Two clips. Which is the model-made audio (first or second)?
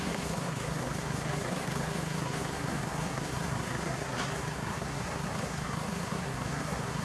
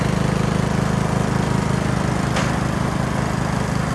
first